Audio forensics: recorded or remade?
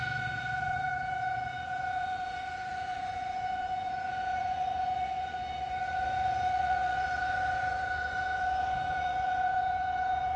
remade